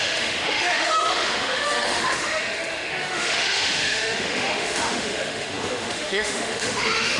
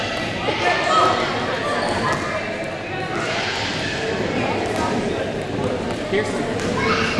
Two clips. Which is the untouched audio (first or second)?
second